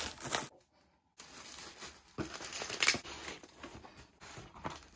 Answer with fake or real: real